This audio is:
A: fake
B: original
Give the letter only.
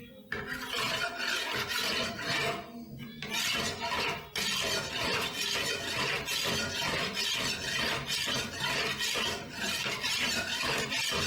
B